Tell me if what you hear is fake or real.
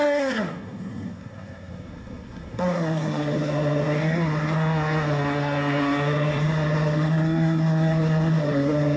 fake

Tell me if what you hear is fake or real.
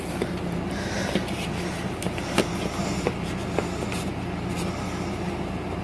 real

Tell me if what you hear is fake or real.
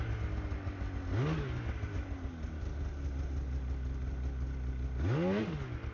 real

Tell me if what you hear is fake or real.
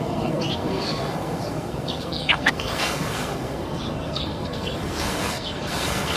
fake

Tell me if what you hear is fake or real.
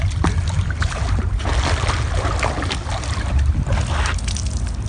real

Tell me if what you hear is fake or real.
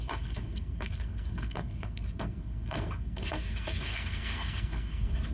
fake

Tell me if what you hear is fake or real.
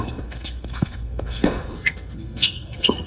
fake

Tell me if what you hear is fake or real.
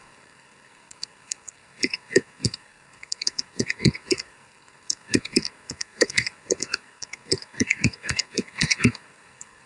fake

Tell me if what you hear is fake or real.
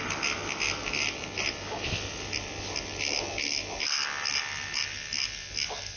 real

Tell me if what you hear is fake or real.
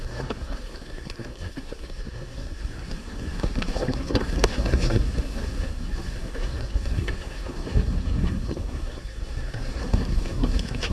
fake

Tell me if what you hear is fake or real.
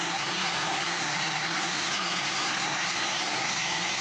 fake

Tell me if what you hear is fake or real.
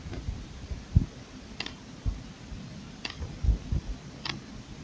real